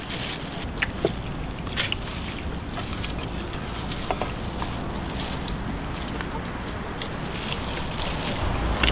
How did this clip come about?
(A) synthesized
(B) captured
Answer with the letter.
B